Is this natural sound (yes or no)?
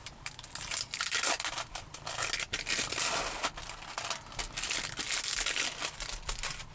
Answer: yes